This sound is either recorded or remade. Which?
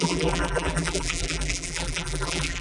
remade